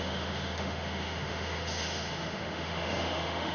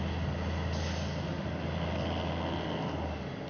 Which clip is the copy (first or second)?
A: first